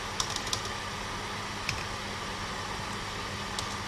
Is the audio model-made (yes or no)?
no